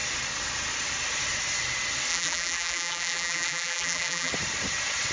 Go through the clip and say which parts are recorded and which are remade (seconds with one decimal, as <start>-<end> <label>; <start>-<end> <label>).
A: 0.0-2.1 recorded; 2.1-4.3 remade; 4.3-5.1 recorded